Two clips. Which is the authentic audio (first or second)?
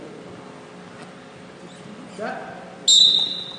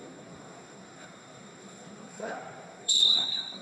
first